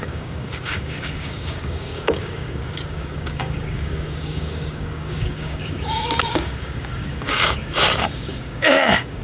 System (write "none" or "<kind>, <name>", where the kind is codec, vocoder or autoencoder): codec, DAC